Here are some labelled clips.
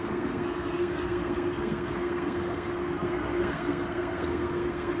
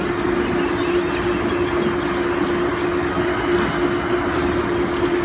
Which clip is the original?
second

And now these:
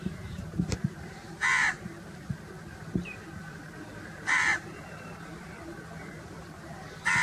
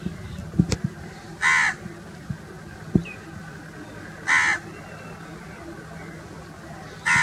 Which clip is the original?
second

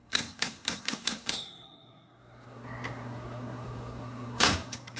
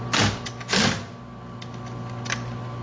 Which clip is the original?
second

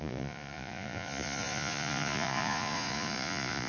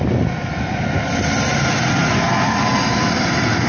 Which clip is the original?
second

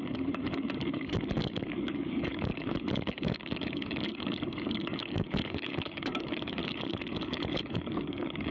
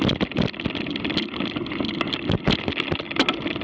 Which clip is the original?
second